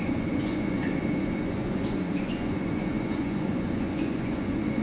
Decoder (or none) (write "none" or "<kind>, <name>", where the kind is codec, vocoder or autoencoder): vocoder, Vocos